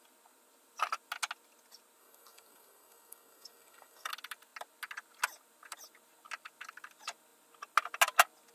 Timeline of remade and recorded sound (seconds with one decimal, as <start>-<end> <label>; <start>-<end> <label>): 0.0-2.0 recorded; 2.0-4.1 remade; 4.1-8.5 recorded